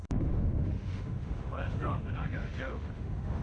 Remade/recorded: remade